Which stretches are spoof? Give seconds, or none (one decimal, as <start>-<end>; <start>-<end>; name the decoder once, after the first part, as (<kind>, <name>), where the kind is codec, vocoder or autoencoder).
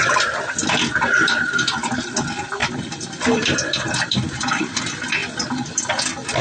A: 2.6-4.8 (vocoder, BigVGAN v2)